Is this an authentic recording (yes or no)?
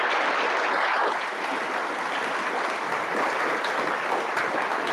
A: yes